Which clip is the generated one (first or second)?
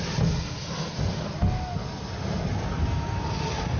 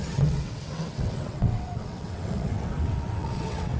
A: second